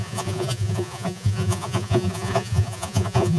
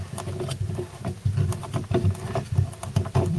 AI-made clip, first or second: first